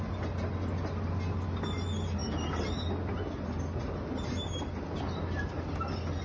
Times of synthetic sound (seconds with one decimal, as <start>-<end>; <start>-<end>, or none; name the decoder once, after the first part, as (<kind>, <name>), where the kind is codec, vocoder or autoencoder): none